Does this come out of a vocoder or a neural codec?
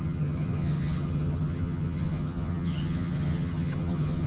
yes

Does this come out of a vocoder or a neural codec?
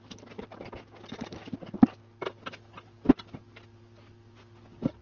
no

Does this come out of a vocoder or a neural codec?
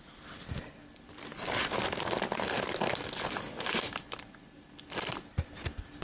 no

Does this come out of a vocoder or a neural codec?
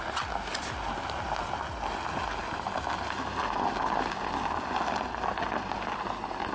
no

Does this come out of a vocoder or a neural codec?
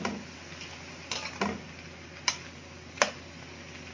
no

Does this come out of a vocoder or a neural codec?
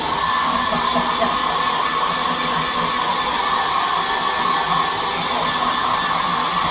no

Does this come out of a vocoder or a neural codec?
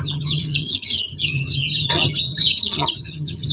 yes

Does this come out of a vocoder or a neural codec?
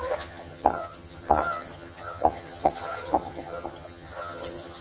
yes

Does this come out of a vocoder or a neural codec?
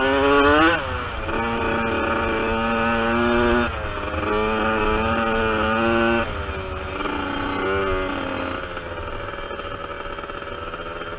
no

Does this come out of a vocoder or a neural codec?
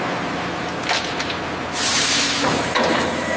no